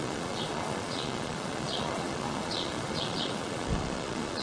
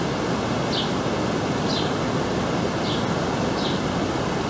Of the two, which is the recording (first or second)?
second